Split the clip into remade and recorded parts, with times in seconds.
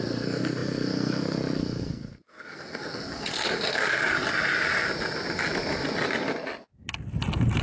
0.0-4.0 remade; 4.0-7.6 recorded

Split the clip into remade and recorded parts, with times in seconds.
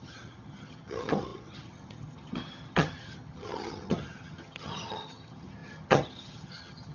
0.0-6.9 remade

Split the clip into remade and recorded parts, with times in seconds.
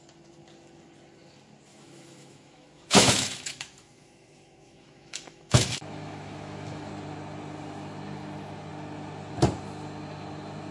0.0-1.7 recorded; 1.7-6.9 remade; 6.9-10.7 recorded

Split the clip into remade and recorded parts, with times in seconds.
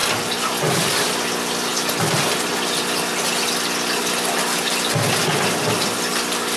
0.0-6.6 recorded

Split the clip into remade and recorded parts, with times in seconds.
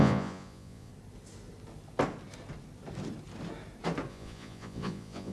0.0-0.9 remade; 0.9-4.1 recorded; 4.1-5.3 remade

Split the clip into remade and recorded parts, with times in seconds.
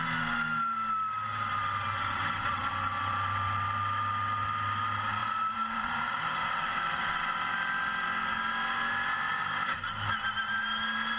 0.0-5.2 recorded; 5.2-7.0 remade; 7.0-11.2 recorded